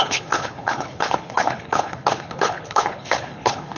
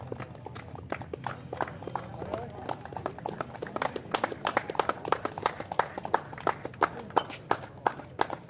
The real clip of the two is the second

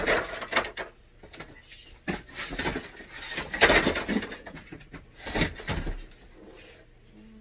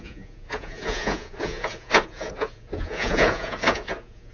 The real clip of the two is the first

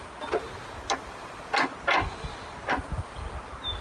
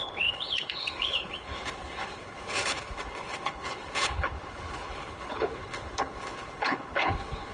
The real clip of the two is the first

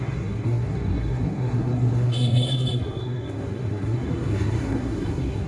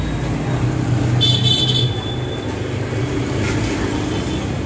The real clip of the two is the second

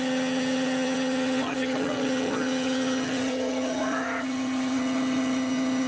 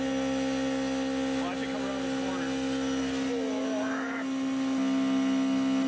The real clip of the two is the second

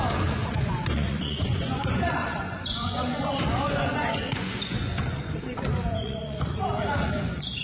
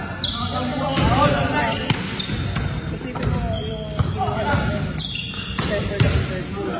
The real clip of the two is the second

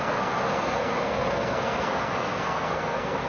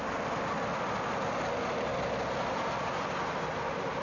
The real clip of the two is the second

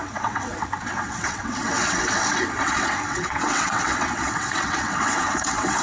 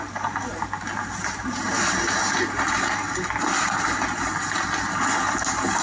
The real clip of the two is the second